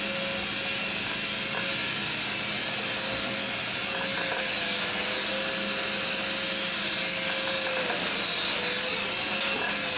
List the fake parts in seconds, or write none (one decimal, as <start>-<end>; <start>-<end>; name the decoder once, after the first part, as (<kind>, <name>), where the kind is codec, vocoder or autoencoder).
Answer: none